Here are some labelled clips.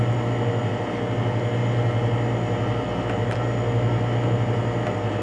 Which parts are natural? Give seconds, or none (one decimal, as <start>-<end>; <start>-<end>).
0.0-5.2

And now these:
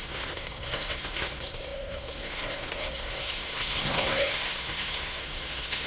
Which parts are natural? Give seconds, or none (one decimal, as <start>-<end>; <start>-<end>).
none

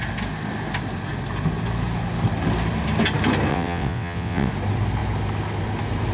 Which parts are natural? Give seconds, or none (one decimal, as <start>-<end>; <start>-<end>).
0.0-3.5; 4.5-6.1

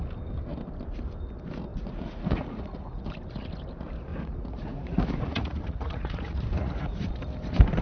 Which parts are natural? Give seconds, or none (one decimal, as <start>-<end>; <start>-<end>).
0.0-1.7; 3.0-4.1; 7.0-7.8

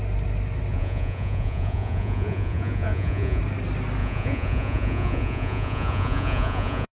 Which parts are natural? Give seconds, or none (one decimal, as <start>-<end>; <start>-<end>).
0.0-0.7; 3.4-4.0

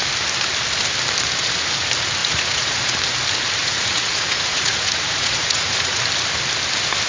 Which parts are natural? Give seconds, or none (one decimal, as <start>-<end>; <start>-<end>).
0.0-2.2; 2.8-3.6; 6.0-7.1

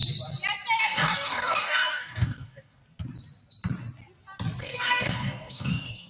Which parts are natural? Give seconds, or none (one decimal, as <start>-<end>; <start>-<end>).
0.0-0.8; 2.8-4.6